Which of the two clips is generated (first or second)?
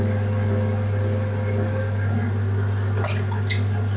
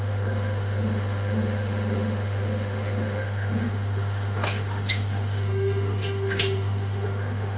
second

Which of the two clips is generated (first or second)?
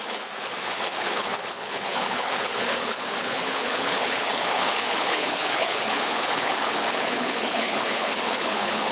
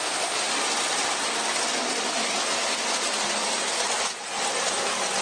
first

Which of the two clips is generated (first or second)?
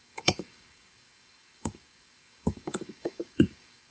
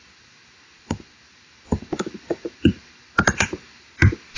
first